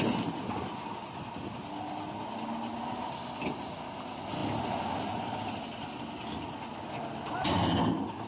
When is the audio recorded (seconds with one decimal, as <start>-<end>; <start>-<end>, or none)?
0.0-8.3